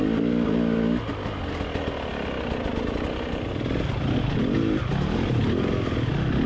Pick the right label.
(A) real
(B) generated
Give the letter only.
A